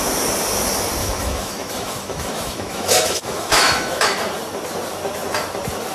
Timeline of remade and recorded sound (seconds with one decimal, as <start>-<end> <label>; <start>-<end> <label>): 0.0-1.0 recorded; 1.0-4.2 remade; 4.2-5.9 recorded